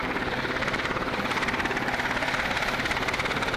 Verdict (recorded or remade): recorded